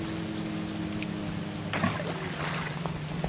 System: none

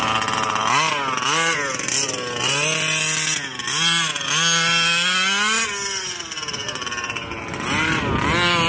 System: none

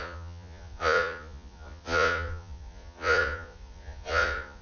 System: vocoder, Vocos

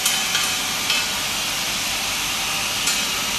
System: none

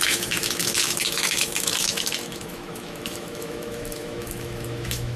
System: autoencoder, DAC-VAE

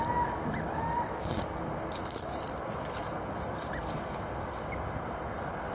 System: none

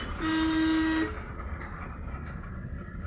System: none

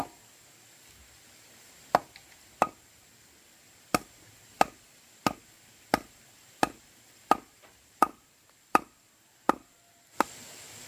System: none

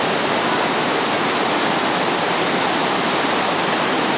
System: none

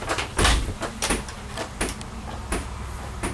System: none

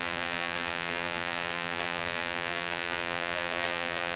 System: vocoder, BigVGAN v2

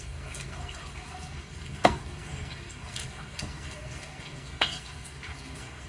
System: codec, SNAC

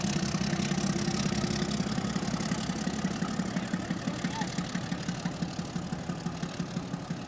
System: none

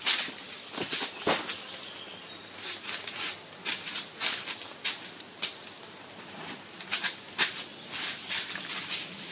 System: none